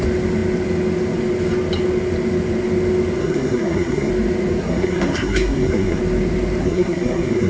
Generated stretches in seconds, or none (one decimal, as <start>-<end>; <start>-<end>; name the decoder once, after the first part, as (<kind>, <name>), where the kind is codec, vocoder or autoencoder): 3.2-4.1 (codec, SNAC); 4.6-6.0; 6.6-7.5